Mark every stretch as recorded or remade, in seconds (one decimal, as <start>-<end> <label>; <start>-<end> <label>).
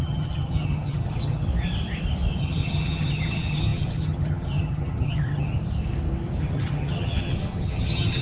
0.0-1.5 remade; 1.5-2.4 recorded; 2.4-5.5 remade; 5.5-6.4 recorded; 6.4-8.2 remade